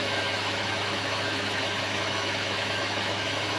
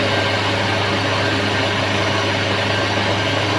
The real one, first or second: second